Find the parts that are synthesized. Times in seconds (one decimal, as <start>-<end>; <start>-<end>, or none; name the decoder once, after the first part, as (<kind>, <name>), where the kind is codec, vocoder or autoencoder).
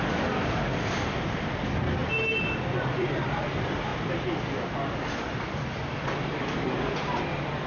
0.0-2.0 (vocoder, BigVGAN v2); 2.6-3.9; 7.2-7.7